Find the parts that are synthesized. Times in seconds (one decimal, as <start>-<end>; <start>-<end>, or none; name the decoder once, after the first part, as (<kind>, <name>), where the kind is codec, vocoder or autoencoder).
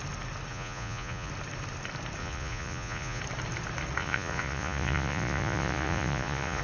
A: 0.5-1.3 (vocoder, Vocos); 2.2-3.2; 4.0-6.6